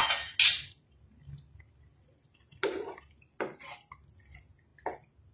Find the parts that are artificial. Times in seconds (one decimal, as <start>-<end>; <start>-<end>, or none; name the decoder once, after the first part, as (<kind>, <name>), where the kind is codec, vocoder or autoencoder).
none